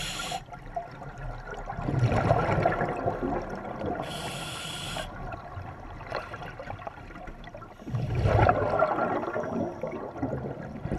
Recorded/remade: recorded